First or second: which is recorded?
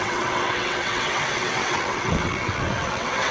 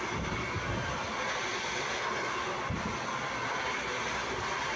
second